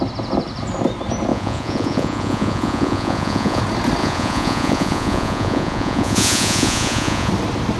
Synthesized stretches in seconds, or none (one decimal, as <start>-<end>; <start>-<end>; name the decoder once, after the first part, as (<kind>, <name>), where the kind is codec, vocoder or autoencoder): 1.3-3.6 (vocoder, Vocos); 4.0-7.3